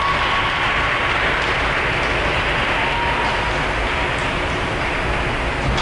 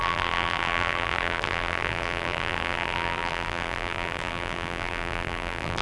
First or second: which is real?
first